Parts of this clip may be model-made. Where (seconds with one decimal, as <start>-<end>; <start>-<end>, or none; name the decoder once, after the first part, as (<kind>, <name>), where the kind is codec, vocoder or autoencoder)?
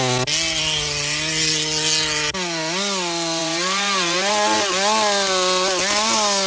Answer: 3.4-4.3 (vocoder, BigVGAN v2)